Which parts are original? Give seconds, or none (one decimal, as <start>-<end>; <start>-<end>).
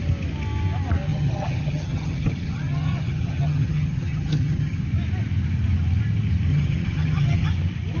0.0-1.1; 4.8-6.5; 7.5-8.0